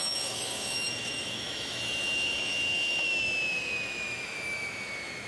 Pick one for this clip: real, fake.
fake